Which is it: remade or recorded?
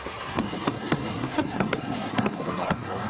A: remade